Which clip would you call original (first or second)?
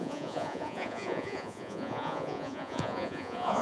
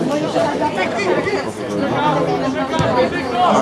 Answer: second